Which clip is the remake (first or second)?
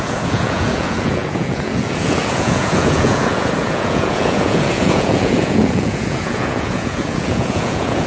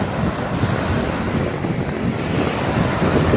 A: first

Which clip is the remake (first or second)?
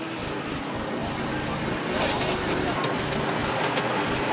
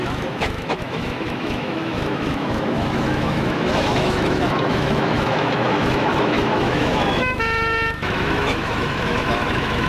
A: second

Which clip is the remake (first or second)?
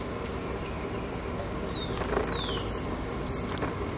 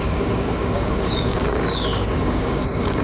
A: second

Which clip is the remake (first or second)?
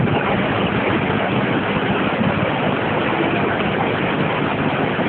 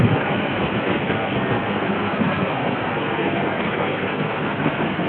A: second